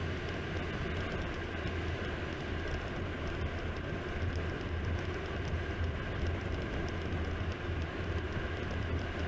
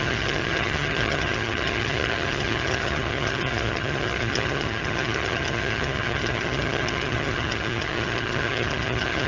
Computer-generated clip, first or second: second